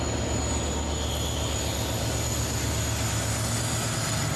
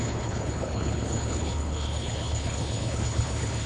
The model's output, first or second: second